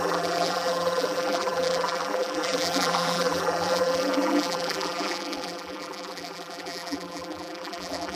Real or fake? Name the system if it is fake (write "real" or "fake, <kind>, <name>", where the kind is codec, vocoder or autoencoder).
fake, vocoder, BigVGAN v2